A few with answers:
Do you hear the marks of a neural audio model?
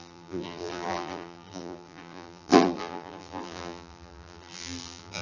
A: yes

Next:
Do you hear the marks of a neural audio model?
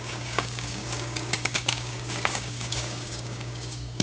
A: yes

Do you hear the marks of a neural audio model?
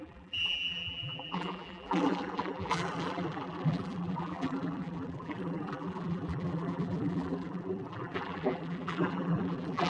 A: yes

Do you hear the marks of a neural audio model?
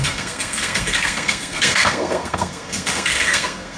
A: yes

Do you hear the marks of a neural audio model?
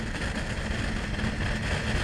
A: no